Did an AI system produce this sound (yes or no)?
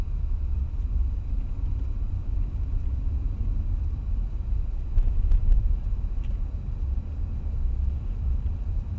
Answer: yes